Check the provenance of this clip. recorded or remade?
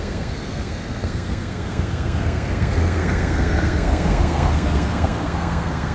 remade